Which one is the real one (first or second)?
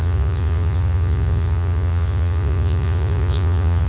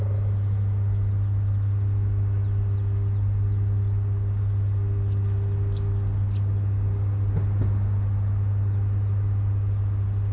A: second